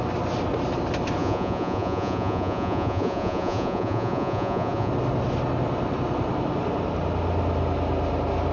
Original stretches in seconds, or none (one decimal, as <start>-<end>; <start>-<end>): 0.0-1.2; 4.9-8.5